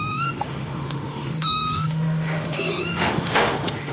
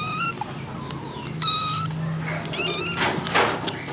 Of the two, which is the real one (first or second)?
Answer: second